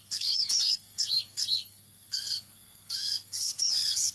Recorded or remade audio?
remade